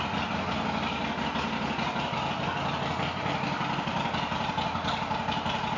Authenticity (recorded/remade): recorded